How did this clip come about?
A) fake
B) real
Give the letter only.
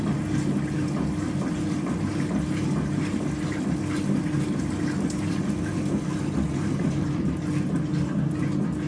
B